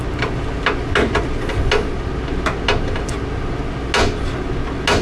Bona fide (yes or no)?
yes